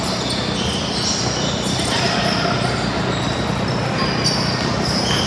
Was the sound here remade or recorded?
recorded